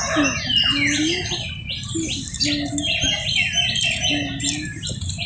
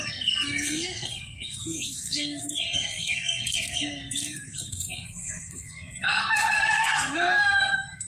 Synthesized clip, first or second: second